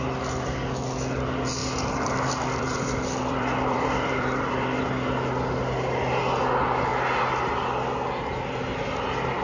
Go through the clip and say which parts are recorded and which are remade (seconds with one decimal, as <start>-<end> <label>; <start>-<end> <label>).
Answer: 0.0-1.6 recorded; 1.6-4.8 remade; 4.8-9.4 recorded